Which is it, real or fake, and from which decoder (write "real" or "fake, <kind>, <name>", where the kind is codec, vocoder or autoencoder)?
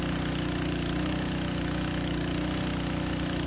real